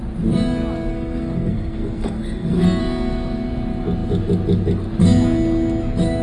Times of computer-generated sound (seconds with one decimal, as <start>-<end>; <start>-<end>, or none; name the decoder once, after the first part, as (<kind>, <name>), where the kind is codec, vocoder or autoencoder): 0.9-2.8 (codec, SNAC)